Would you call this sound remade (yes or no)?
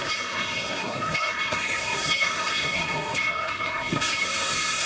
yes